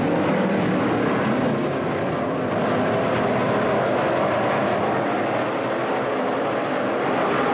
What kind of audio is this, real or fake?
real